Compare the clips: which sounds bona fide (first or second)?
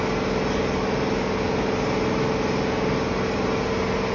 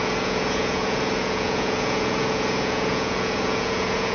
first